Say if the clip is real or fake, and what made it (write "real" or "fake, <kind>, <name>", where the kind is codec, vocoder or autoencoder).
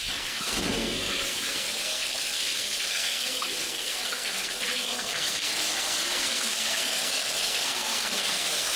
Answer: fake, codec, SNAC